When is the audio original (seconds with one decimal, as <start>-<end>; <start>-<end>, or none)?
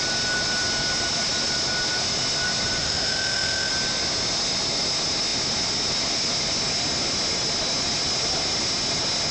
0.0-2.8; 3.7-9.3